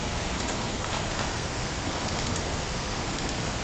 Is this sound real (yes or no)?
no